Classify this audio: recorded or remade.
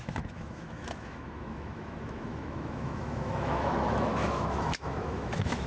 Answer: remade